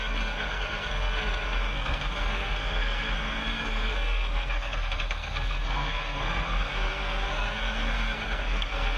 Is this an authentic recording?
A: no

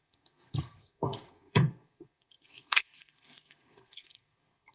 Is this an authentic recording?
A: no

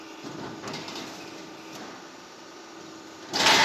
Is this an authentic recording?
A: yes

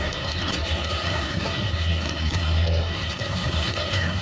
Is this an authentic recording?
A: no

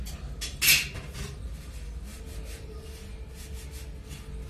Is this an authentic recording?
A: yes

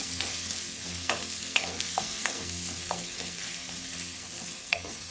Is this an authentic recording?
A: no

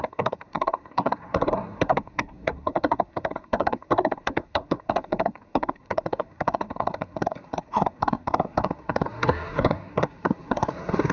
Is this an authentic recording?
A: no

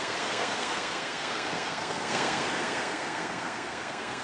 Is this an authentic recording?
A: no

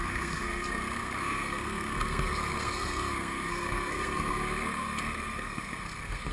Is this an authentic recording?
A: no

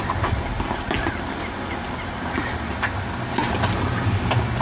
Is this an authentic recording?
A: yes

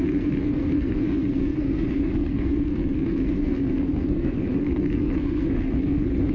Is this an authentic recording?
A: no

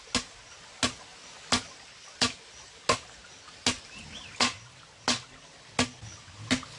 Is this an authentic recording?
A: yes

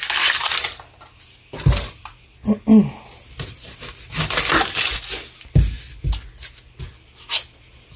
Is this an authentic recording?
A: yes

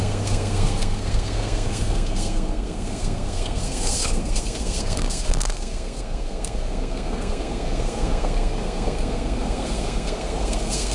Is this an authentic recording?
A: no